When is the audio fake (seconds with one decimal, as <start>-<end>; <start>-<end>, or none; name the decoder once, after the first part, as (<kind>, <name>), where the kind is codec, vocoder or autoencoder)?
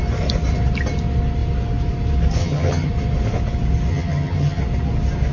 2.4-2.9 (vocoder, HiFi-GAN); 3.9-4.6